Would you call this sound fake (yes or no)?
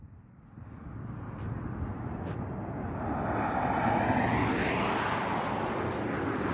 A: no